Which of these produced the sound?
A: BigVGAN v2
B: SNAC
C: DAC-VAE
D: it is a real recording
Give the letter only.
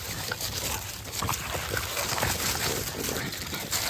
D